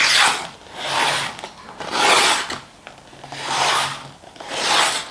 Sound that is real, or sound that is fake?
real